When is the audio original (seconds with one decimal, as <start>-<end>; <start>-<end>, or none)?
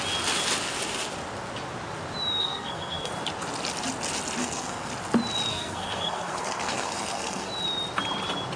0.0-2.4; 3.1-4.4; 4.9-5.5; 7.5-8.6